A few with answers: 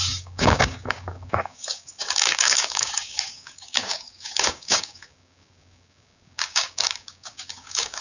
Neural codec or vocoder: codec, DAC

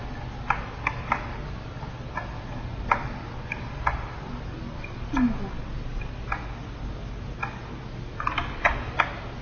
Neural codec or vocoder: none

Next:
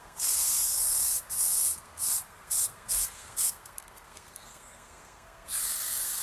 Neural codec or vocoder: codec, SNAC